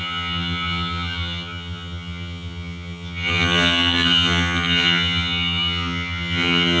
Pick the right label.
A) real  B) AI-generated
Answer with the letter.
B